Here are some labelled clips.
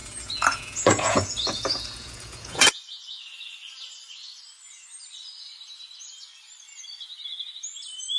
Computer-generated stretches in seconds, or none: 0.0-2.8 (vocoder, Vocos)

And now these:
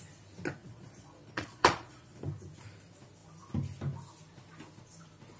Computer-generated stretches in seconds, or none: 0.6-2.2 (vocoder, Vocos)

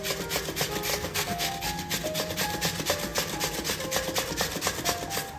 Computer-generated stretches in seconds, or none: 0.9-1.5 (codec, SNAC)

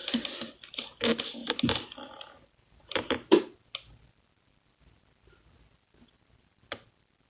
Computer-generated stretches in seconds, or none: none

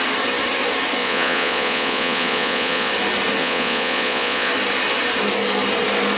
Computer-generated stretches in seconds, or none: 1.0-2.9 (vocoder, Vocos); 3.4-4.5

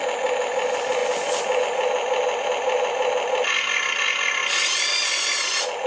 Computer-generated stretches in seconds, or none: none